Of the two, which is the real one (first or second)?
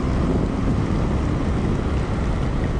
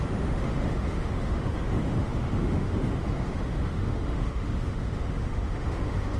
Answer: first